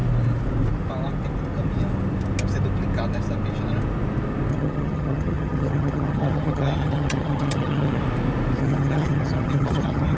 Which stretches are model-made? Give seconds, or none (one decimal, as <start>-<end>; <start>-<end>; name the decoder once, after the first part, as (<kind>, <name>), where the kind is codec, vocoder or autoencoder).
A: 4.5-8.0 (vocoder, HiFi-GAN); 8.6-10.2